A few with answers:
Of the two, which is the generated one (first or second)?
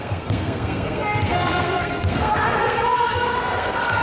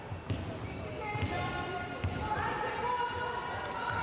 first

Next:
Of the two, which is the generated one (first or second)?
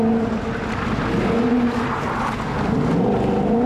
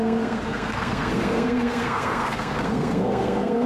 second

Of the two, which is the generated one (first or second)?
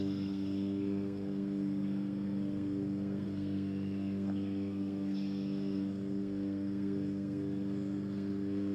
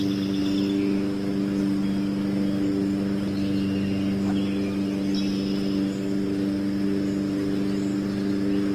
first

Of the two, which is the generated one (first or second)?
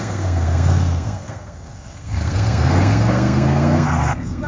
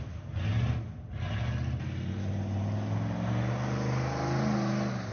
first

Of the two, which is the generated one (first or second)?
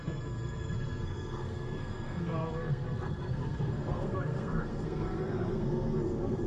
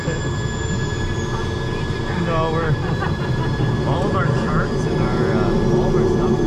first